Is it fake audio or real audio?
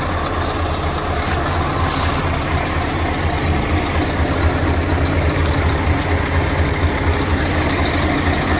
real